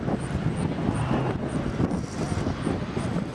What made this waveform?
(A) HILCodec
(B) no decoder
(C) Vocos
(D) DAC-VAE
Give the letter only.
B